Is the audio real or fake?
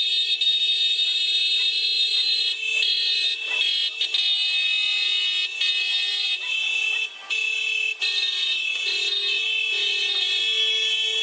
real